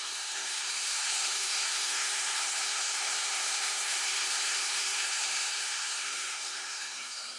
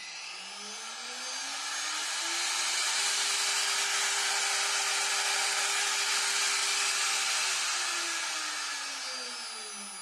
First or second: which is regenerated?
first